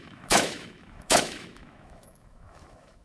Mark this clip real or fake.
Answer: fake